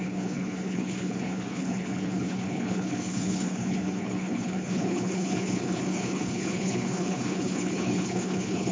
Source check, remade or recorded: remade